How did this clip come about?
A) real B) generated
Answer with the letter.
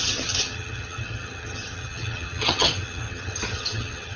B